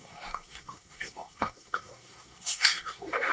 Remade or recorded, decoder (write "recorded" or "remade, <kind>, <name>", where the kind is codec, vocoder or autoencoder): remade, codec, SNAC